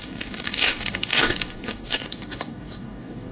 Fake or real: fake